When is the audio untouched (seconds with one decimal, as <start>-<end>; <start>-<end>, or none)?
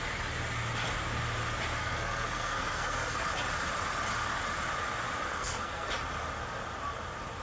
0.0-1.8; 3.3-5.3; 5.9-7.4